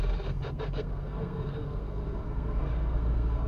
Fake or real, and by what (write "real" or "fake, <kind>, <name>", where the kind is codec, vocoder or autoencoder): fake, codec, SNAC